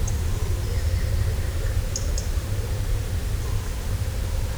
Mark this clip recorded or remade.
recorded